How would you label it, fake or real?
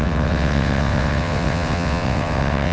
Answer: fake